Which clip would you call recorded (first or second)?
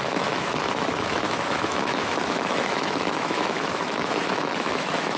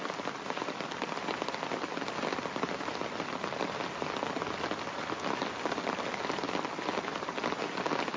second